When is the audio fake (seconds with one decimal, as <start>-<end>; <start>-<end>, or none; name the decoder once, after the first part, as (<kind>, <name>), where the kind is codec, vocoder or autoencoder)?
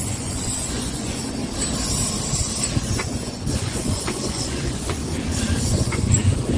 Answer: 0.0-1.4 (vocoder, Vocos); 2.8-5.0; 5.6-6.6